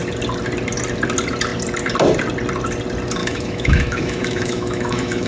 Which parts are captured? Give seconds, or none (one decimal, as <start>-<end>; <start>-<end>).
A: 0.0-3.2